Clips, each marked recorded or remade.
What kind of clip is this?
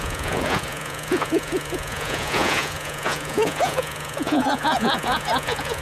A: remade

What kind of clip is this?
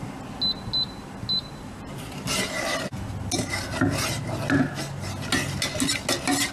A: recorded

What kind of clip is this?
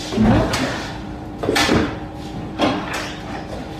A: remade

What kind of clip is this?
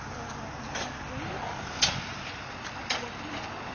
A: recorded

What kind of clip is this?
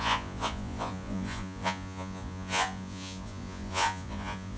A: remade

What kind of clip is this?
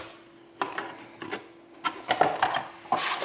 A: recorded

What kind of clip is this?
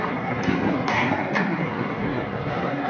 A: remade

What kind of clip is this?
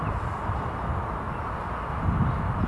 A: recorded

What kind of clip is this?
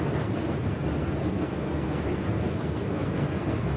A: remade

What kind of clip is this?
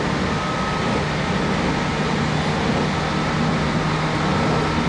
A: recorded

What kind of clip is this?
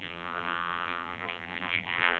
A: remade